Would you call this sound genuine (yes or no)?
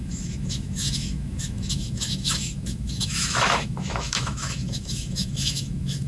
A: no